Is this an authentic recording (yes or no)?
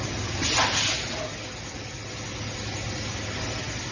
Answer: yes